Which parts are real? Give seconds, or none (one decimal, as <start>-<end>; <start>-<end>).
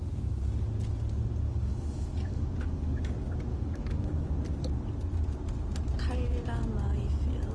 0.0-1.5; 3.0-3.5; 4.1-7.5